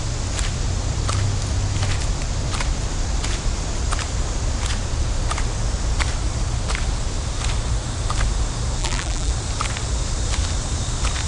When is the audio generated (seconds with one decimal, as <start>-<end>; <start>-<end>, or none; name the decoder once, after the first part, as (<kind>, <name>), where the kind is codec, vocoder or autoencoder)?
8.8-9.3 (vocoder, BigVGAN v2)